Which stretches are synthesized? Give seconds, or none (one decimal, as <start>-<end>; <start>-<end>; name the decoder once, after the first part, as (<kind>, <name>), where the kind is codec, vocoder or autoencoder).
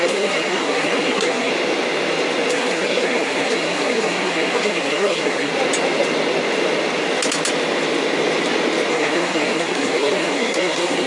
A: 0.0-1.5 (codec, SNAC); 2.5-5.5; 8.9-11.1